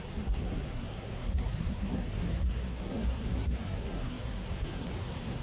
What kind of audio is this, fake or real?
fake